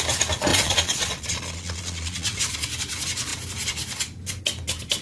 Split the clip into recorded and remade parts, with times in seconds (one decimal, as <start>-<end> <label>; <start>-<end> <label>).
0.0-0.5 recorded; 0.5-2.4 remade; 2.4-5.0 recorded